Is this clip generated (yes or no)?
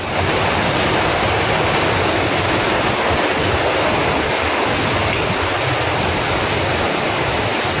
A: no